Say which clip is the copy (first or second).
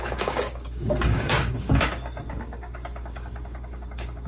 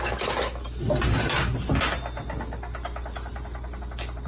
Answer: first